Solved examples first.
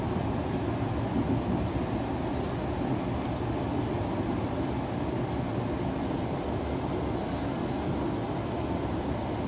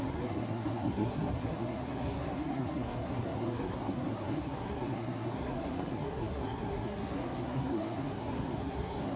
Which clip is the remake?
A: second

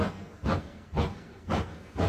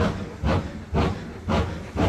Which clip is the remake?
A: first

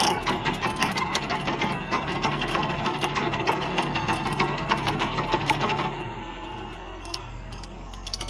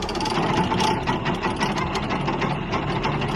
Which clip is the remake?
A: first